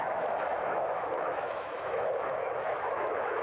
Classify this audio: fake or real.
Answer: fake